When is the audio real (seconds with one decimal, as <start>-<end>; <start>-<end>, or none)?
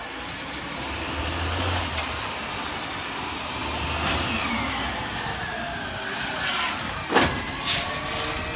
0.0-8.6